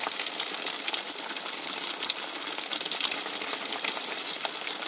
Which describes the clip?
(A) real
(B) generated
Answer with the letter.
A